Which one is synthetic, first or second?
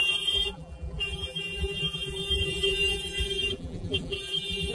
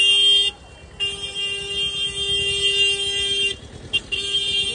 first